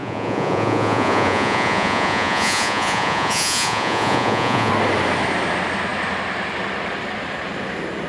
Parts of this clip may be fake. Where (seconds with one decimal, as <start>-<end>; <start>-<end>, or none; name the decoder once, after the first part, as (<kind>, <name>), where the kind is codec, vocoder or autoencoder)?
0.0-4.7 (vocoder, Vocos)